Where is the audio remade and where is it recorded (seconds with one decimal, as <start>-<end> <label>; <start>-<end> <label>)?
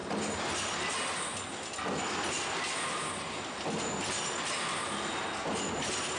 0.0-6.2 recorded